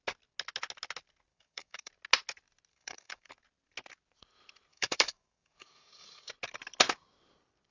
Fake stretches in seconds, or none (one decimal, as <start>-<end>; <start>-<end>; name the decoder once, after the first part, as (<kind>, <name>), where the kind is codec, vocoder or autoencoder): 1.3-1.9 (codec, DAC); 2.7-3.3; 4.7-6.3